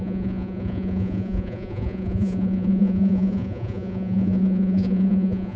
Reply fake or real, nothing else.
fake